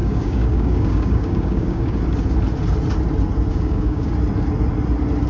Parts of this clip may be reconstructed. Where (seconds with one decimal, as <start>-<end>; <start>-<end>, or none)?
0.0-2.0; 3.5-4.1